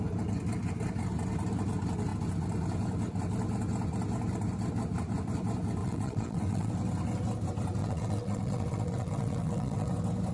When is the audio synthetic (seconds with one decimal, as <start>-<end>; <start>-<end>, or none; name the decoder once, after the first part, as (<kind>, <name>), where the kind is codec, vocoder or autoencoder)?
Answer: 5.8-6.7 (vocoder, WaveNeXt); 7.8-9.9